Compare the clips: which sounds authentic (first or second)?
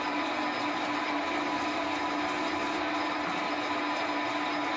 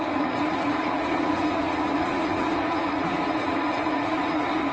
first